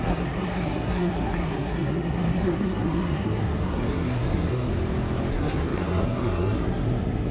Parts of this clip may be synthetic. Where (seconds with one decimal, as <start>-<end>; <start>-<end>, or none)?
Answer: 0.0-4.7; 5.3-7.3